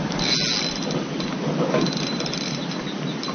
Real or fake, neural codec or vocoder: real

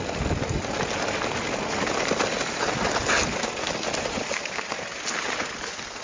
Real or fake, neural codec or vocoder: real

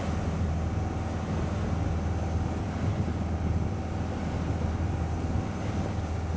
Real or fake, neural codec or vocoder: real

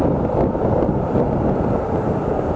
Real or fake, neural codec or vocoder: real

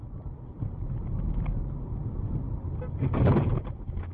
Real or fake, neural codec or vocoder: real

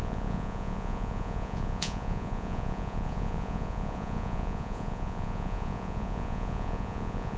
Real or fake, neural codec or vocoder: fake, vocoder, Vocos